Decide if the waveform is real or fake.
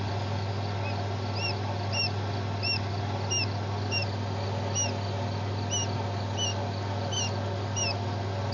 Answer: real